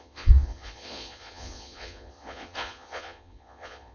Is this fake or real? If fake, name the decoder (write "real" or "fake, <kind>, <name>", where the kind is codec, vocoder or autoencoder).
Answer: fake, vocoder, Vocos